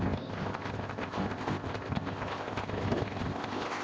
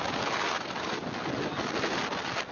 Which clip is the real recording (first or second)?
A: second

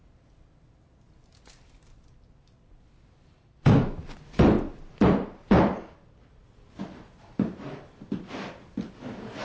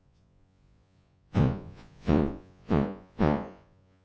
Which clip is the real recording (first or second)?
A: first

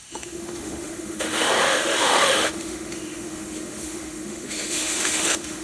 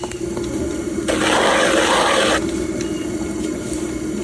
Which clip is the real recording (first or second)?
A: second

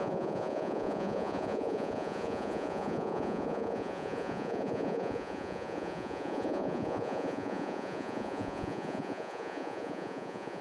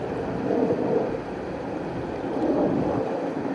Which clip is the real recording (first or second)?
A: second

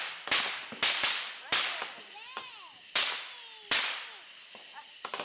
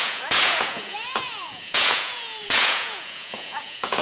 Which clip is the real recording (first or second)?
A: first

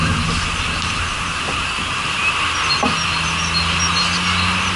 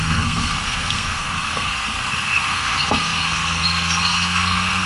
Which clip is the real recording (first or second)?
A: first